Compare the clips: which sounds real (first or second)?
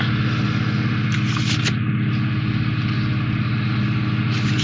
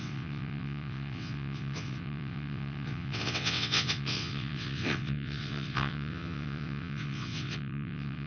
first